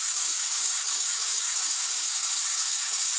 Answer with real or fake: fake